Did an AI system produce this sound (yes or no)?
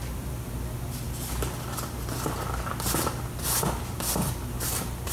no